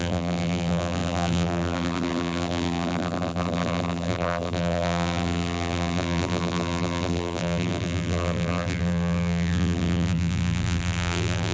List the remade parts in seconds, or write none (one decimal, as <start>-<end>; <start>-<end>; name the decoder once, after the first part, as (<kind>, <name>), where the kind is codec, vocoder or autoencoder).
0.0-11.5 (vocoder, BigVGAN v2)